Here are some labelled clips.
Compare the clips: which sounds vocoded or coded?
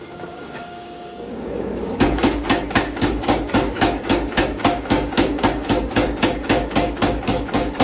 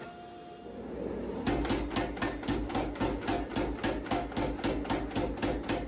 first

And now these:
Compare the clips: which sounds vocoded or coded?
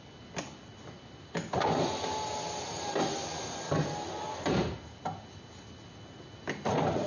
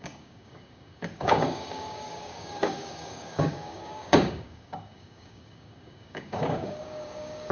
second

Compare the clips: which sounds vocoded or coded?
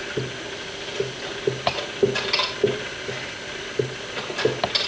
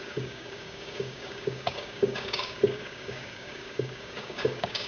second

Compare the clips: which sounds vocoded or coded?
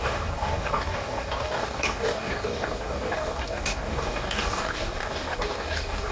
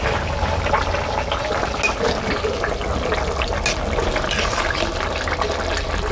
first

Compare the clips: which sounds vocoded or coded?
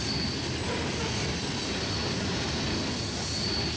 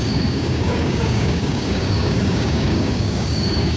second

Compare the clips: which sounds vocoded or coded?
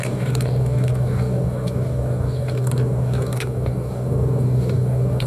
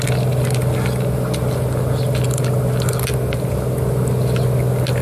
first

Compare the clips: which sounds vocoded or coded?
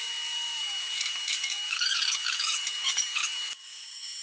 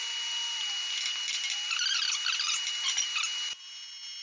first